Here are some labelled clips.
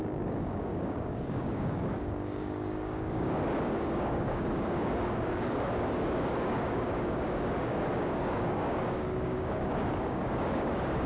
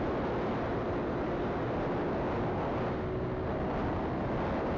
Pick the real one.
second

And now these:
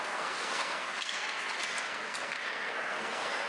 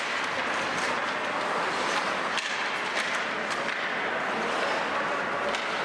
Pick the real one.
second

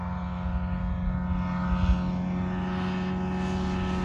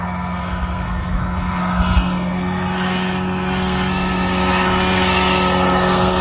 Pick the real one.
first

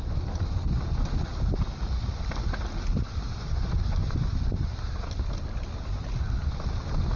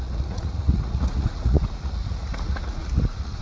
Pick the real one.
first